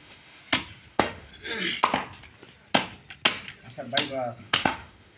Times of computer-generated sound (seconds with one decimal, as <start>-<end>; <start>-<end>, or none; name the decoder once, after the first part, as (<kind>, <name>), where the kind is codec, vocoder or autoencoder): 0.0-0.4 (autoencoder, DAC-VAE); 0.9-1.3; 4.4-5.2